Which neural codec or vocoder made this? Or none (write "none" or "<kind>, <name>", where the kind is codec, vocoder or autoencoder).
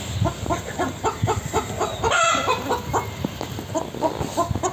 none